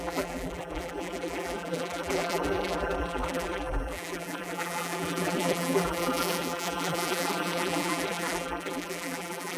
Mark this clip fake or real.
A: fake